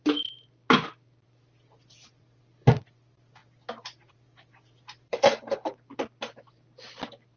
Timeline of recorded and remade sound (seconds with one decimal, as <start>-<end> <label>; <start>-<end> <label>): 0.0-5.1 recorded; 5.1-5.7 remade; 5.7-7.4 recorded